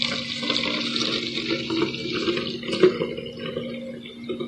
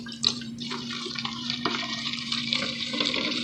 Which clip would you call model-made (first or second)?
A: second